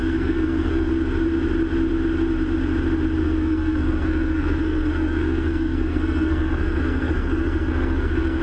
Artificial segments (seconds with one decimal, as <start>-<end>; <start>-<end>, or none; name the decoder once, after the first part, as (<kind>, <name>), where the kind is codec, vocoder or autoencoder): 0.0-0.9 (codec, SNAC); 3.2-8.4